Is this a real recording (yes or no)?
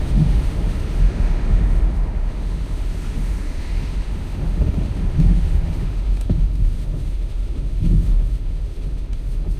no